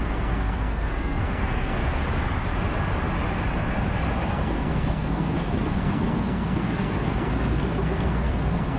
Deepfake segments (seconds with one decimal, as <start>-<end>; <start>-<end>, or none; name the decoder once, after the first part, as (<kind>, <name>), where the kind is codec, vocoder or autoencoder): 0.0-2.0 (codec, SNAC); 4.3-8.8